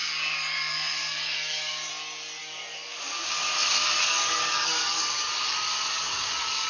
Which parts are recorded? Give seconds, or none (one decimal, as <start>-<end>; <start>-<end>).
1.9-2.4